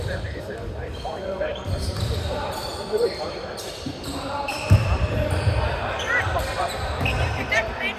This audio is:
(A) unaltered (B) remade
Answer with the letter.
B